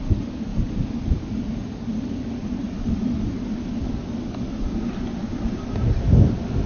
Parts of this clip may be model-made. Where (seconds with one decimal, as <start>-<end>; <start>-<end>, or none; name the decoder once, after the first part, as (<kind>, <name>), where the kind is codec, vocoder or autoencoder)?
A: none